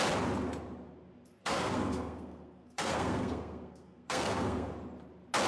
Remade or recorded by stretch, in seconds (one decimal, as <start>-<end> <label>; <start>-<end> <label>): 0.0-1.4 recorded; 1.4-4.7 remade; 4.7-5.5 recorded